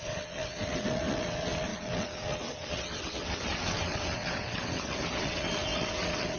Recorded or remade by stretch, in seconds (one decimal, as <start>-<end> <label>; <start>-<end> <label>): 0.0-6.4 remade